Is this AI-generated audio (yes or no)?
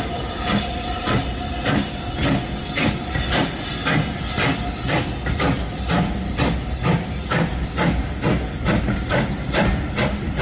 no